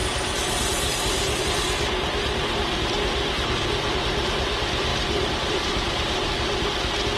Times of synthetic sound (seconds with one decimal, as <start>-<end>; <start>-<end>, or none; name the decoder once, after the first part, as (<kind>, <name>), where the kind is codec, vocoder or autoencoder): 0.0-1.4 (vocoder, BigVGAN v2); 4.9-6.3